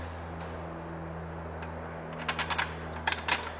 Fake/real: real